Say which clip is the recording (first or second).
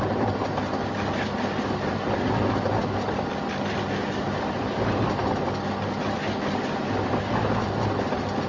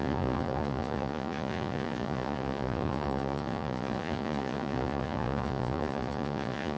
first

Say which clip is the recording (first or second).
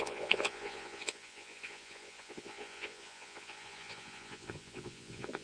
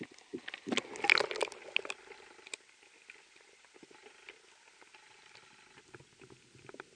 second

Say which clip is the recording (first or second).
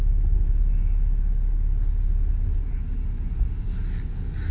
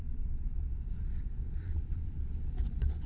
first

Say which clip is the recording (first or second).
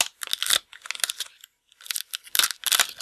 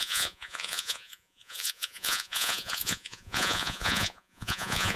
first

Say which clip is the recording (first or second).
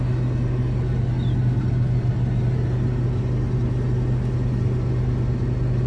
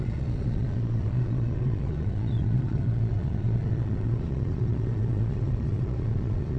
first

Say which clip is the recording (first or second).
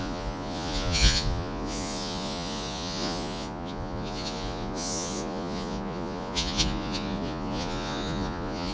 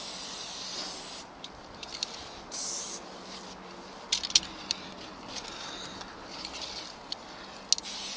second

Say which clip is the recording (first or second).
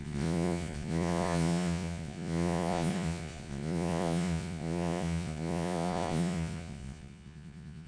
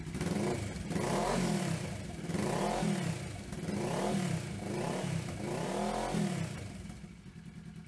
second